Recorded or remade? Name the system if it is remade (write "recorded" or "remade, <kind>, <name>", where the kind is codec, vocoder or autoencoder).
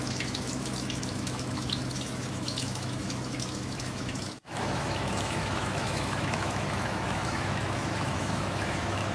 remade, autoencoder, DAC-VAE